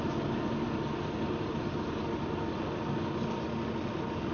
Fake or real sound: real